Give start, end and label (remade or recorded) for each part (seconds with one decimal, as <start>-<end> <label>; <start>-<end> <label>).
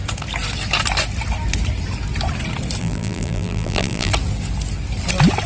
0.0-2.8 recorded; 2.8-4.1 remade; 4.1-5.5 recorded